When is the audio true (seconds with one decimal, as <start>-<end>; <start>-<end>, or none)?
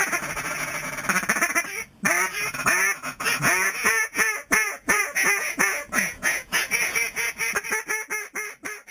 0.9-2.3; 7.3-8.9